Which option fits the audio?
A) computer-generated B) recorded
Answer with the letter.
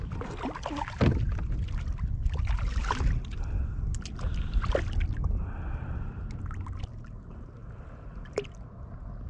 B